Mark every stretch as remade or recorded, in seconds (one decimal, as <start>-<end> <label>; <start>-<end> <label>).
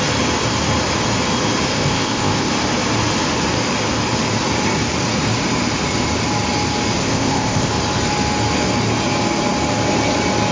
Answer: 0.0-1.7 recorded; 1.7-2.5 remade; 2.5-7.0 recorded; 7.0-7.7 remade; 7.7-10.5 recorded